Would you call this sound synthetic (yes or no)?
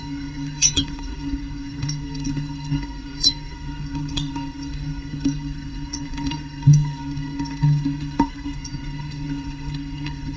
yes